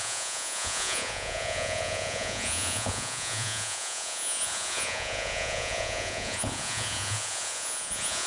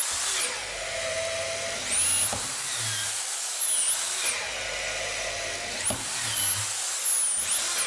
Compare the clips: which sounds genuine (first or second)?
second